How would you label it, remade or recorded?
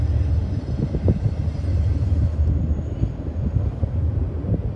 recorded